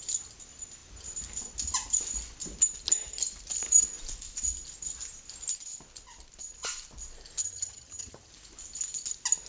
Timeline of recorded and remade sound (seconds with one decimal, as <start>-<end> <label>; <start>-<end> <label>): 0.0-7.4 recorded; 7.4-8.3 remade; 8.3-9.5 recorded